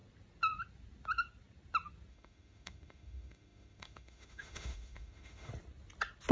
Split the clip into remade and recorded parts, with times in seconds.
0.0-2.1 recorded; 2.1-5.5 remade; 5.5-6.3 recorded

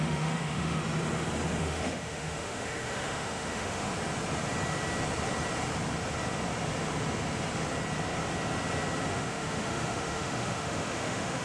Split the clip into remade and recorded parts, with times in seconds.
0.0-0.8 remade; 0.8-1.6 recorded; 1.6-3.9 remade; 3.9-9.1 recorded; 9.1-11.4 remade

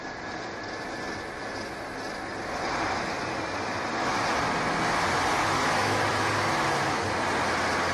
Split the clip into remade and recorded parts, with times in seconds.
0.0-5.4 recorded; 5.4-7.1 remade; 7.1-7.9 recorded

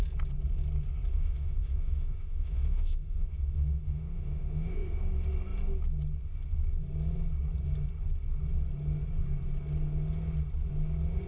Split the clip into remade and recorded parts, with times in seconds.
0.0-1.1 recorded; 1.1-5.0 remade; 5.0-11.3 recorded